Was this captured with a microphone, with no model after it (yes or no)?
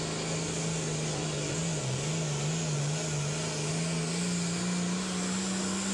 yes